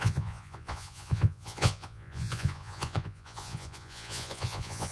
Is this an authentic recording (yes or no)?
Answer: no